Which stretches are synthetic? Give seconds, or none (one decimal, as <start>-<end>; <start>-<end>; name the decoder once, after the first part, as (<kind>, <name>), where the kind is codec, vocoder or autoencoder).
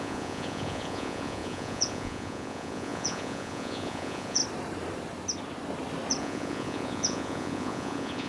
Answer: 0.0-4.4 (vocoder, Vocos); 6.2-8.3